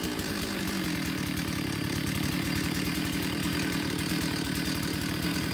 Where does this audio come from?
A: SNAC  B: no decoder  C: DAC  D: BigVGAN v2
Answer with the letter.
D